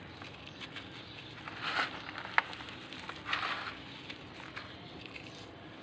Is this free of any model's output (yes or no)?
yes